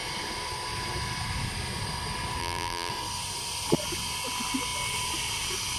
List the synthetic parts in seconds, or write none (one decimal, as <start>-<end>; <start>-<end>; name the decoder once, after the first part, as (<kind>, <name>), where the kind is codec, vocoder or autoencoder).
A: 2.4-2.9 (vocoder, BigVGAN v2)